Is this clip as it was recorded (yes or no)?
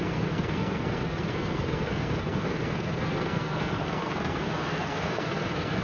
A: no